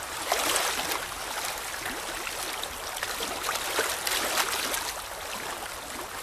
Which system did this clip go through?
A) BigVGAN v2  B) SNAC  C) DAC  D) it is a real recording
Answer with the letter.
D